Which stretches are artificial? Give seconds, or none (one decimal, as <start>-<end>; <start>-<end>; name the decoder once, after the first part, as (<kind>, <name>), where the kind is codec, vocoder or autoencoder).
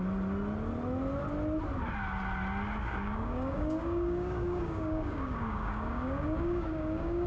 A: 2.8-7.3 (codec, DAC)